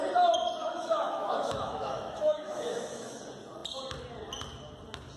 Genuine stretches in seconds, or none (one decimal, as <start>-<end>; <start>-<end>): 0.0-0.6; 3.2-5.2